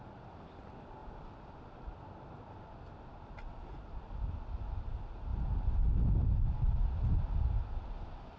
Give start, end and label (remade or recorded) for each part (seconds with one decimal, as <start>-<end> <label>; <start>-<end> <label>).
0.0-8.4 recorded